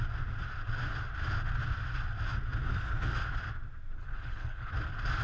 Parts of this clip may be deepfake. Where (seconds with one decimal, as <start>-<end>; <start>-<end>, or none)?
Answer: 4.0-4.7